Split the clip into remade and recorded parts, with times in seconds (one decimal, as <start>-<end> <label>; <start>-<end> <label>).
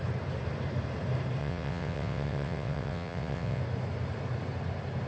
0.0-1.4 recorded; 1.4-3.6 remade; 3.6-5.1 recorded